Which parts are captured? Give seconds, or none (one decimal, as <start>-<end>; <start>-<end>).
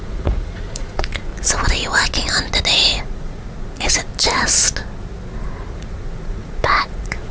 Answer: 1.3-3.0; 4.1-5.3